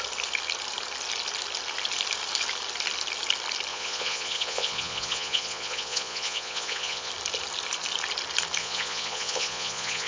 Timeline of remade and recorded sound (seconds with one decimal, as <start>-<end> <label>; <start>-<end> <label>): 0.0-3.7 recorded; 3.7-7.1 remade; 7.1-8.6 recorded; 8.6-10.1 remade